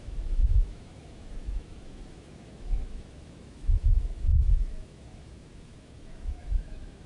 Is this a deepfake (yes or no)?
yes